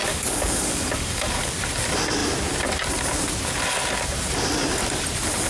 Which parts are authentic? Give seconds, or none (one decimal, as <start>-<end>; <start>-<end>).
1.5-5.5